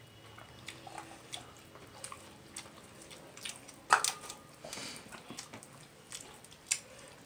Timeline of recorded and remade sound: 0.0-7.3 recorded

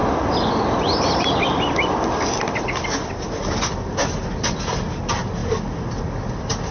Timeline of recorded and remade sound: 0.0-6.7 recorded

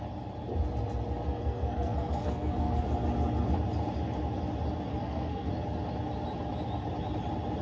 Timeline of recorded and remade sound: 0.0-1.3 recorded; 1.3-2.8 remade; 2.8-4.9 recorded; 4.9-5.5 remade; 5.5-7.6 recorded

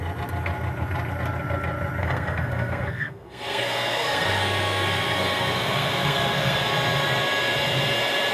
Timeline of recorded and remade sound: 0.0-2.0 recorded; 2.0-6.7 remade; 6.7-8.3 recorded

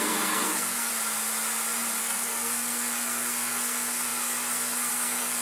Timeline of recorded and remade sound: 0.0-0.9 remade; 0.9-2.0 recorded; 2.0-5.4 remade

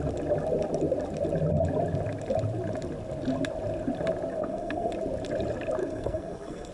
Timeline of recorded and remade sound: 0.0-4.3 recorded; 4.3-4.9 remade; 4.9-5.8 recorded; 5.8-6.7 remade